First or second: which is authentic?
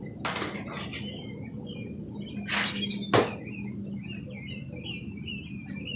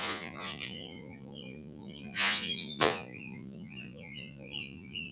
first